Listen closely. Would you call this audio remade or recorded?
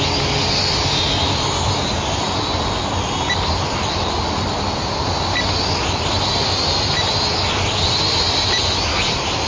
recorded